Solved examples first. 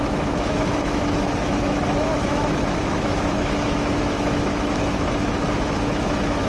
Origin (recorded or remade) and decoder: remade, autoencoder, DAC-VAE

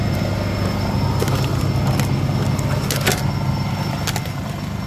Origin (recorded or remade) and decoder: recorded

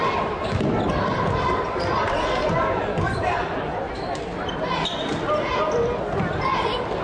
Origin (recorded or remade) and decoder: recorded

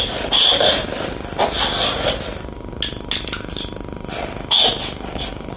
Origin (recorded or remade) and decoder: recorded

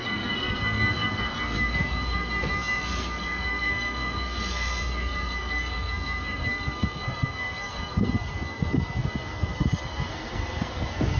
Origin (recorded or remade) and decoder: remade, codec, SNAC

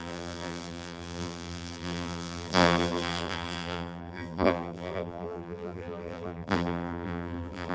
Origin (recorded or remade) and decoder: remade, vocoder, BigVGAN v2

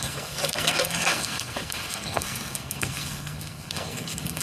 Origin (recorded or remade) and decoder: remade, codec, SNAC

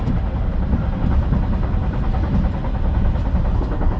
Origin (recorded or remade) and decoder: recorded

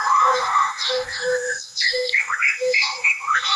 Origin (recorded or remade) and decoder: remade, codec, DAC